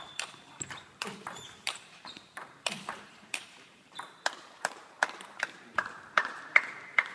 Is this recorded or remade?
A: remade